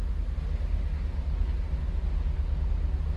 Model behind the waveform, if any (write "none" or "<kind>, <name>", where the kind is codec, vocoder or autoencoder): none